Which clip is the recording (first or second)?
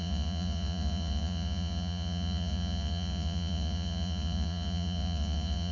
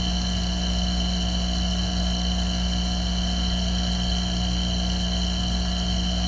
second